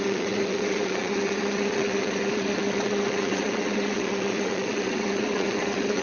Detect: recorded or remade remade